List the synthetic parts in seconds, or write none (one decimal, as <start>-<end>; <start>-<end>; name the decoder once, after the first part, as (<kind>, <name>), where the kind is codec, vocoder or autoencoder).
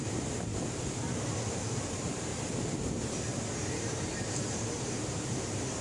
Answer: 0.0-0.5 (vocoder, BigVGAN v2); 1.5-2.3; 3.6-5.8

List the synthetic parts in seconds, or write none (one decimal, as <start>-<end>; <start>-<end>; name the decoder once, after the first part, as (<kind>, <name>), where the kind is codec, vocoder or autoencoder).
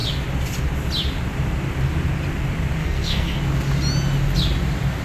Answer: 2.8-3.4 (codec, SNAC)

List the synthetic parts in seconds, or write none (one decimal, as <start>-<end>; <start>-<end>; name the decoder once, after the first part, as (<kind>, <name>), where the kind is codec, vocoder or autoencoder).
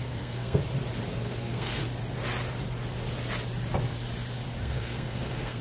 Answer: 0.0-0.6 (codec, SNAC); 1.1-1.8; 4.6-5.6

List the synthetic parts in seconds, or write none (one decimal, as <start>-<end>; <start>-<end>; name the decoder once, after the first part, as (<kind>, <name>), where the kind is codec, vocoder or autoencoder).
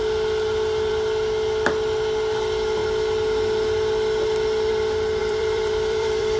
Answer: 5.2-6.4 (vocoder, BigVGAN v2)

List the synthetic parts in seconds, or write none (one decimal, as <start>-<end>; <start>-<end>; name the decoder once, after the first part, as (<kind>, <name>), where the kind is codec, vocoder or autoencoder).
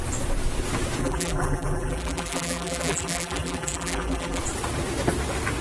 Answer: 1.0-4.4 (vocoder, BigVGAN v2)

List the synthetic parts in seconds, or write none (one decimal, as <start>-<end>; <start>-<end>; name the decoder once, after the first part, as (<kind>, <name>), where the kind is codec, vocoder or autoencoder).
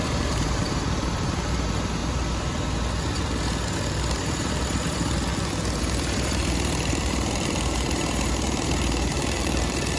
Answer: 0.0-2.0 (vocoder, BigVGAN v2); 4.1-5.3; 5.8-10.0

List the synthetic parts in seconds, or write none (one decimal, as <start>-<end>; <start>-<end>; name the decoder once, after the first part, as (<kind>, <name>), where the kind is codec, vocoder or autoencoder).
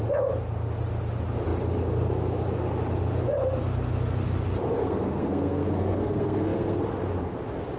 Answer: 4.8-6.8 (codec, SNAC)